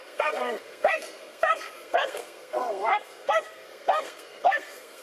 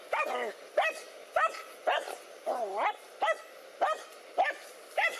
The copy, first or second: first